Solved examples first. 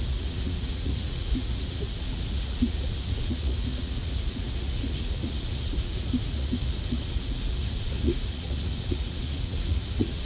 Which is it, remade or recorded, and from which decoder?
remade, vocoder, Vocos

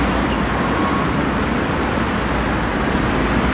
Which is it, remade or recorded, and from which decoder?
recorded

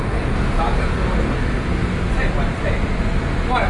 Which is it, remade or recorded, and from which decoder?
recorded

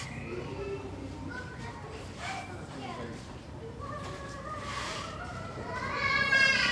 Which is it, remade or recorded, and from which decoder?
remade, vocoder, BigVGAN v2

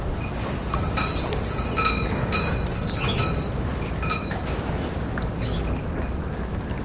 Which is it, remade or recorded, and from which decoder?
recorded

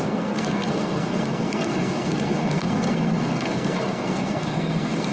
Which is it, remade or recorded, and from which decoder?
remade, codec, SNAC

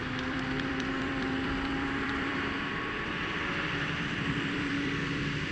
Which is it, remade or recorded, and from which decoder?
remade, vocoder, BigVGAN v2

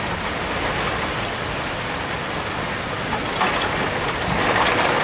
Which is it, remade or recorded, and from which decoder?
recorded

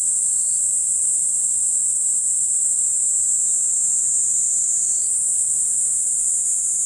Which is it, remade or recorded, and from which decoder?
recorded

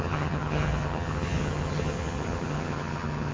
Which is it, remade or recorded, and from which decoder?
remade, vocoder, HiFi-GAN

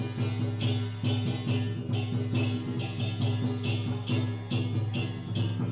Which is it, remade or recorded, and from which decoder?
recorded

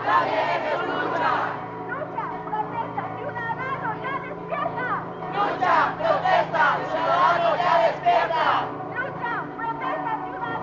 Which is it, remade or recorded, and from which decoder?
remade, vocoder, BigVGAN v2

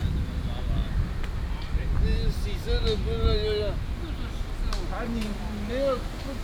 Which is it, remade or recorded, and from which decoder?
recorded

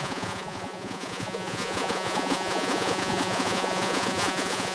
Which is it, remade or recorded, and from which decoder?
remade, vocoder, Vocos